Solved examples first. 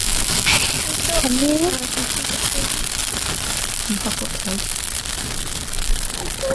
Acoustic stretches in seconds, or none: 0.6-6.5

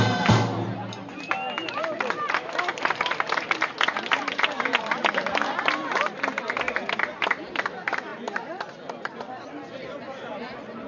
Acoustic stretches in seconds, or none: 0.0-2.7; 3.5-10.9

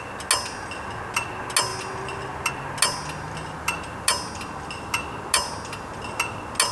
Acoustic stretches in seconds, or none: 0.0-6.7

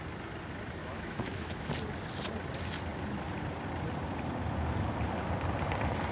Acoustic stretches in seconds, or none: 0.0-0.8; 1.7-6.1

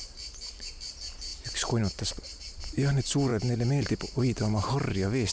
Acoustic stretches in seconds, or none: 0.0-5.3